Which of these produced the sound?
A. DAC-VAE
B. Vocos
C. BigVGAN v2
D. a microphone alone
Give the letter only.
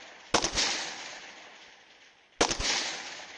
D